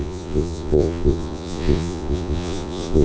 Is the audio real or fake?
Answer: fake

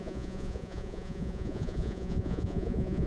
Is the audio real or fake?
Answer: fake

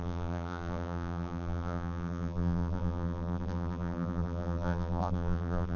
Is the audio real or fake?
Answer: fake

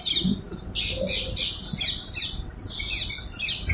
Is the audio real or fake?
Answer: real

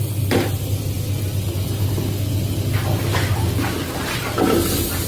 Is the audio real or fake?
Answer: real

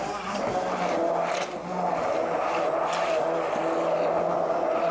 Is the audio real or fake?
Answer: real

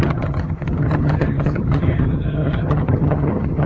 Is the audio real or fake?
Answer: fake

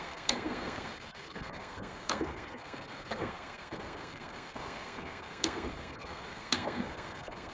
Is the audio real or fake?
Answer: fake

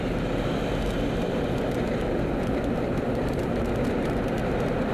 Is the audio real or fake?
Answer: real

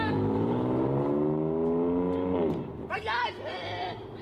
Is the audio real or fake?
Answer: real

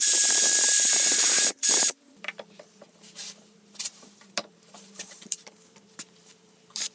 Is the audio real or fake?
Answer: fake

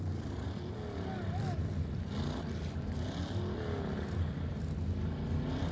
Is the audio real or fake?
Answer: real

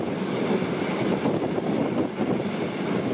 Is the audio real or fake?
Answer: real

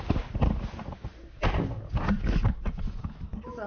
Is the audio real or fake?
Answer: real